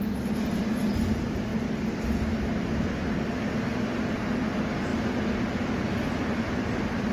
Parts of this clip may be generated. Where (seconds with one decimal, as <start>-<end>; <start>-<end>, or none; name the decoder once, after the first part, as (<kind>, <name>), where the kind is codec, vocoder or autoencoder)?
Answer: none